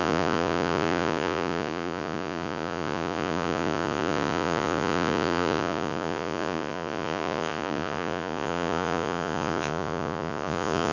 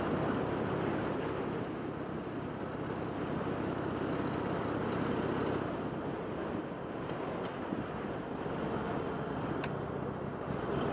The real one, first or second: second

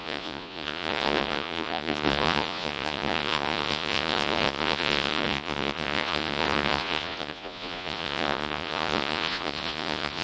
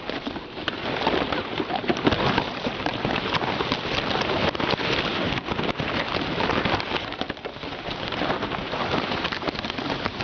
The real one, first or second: second